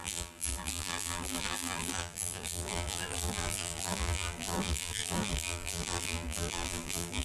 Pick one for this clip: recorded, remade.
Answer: remade